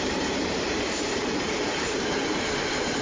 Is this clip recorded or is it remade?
remade